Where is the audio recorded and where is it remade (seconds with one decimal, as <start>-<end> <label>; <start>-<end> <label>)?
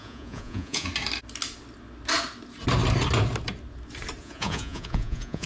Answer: 0.0-0.9 remade; 0.9-4.2 recorded; 4.2-5.5 remade